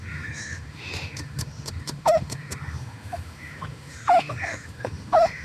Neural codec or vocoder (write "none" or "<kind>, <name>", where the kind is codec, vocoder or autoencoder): autoencoder, DAC-VAE